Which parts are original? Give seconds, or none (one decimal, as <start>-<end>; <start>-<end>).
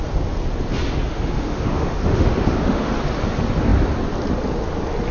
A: 0.0-1.1; 2.9-5.1